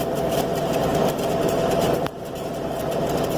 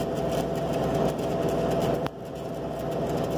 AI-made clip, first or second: first